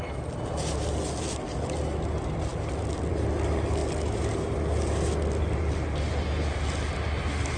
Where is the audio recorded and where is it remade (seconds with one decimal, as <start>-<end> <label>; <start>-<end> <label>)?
0.0-7.6 recorded